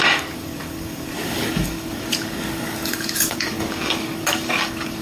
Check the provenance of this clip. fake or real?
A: fake